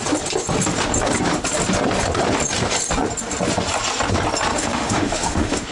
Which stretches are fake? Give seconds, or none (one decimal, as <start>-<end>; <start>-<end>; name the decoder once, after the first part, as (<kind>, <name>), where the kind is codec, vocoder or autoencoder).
4.5-5.7 (autoencoder, DAC-VAE)